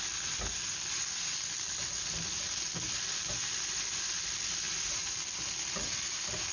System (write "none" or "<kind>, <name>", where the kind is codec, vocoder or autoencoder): none